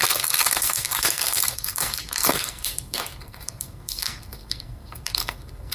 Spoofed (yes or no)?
yes